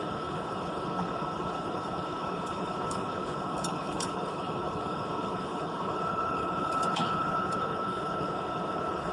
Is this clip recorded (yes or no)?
no